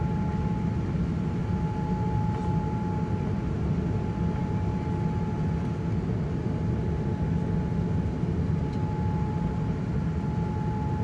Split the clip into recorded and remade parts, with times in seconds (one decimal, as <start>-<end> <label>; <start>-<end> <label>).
0.0-11.0 recorded